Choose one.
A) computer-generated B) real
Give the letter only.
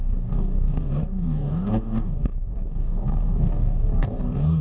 A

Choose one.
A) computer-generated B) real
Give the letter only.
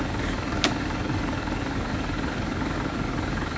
A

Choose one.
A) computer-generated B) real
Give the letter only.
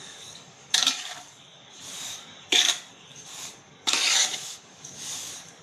A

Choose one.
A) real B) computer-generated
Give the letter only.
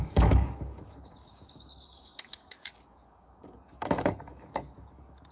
B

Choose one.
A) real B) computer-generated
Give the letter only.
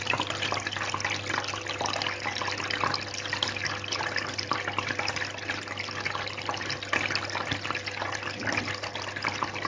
A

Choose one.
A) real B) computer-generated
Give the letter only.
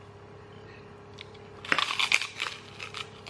A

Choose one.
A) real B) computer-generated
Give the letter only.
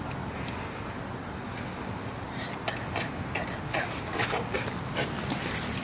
A